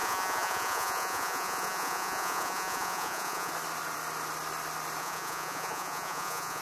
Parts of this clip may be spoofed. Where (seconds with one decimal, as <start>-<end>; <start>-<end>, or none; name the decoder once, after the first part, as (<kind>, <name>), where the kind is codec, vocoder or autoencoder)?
0.0-3.5 (vocoder, Vocos); 5.0-6.6

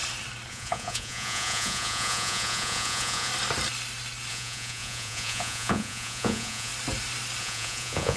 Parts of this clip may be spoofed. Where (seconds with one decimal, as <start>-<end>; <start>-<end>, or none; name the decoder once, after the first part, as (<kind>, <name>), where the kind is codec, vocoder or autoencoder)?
0.5-3.3 (vocoder, Vocos); 4.3-6.7; 7.4-8.2

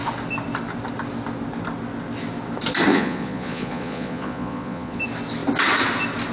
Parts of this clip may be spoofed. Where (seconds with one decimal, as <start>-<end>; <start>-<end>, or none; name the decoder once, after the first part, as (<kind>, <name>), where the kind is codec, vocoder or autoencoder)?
2.9-5.0 (vocoder, Vocos)

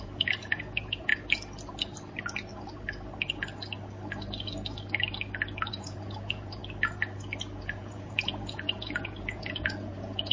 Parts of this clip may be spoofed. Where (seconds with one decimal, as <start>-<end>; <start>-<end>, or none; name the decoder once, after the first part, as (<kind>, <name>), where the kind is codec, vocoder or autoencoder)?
0.0-1.1 (vocoder, Vocos); 5.7-6.6; 7.6-10.3

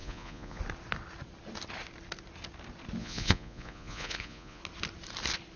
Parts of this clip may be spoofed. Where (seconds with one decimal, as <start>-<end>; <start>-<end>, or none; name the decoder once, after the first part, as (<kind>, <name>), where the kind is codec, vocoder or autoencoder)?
0.0-0.6 (vocoder, Vocos); 3.0-4.6

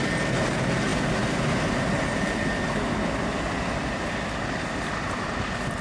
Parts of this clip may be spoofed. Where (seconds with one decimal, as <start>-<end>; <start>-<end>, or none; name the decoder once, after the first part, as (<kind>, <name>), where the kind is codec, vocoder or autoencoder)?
none